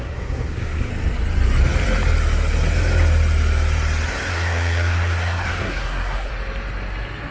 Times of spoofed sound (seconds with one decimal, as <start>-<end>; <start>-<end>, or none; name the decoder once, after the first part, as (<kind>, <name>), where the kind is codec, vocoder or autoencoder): 0.0-0.9 (codec, SNAC); 4.3-6.3